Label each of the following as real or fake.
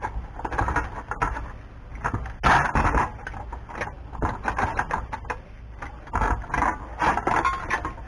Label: real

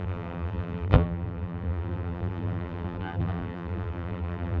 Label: fake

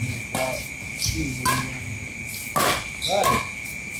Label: real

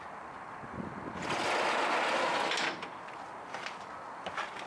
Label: real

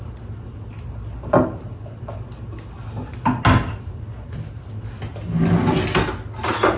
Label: real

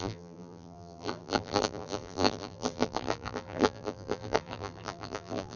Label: fake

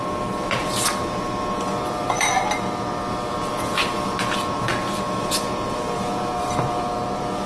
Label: fake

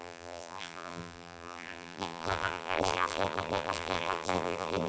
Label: fake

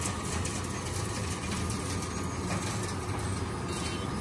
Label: real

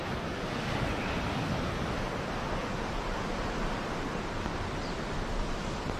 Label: fake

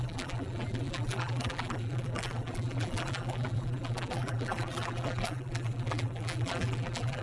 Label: fake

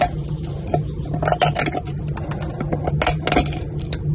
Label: real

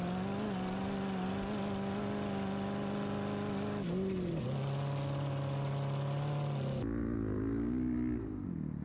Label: real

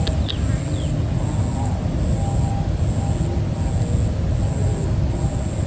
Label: real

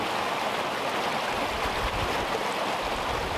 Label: real